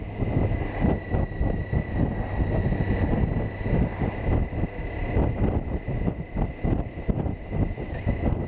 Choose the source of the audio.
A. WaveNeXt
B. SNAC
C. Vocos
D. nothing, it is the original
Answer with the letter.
D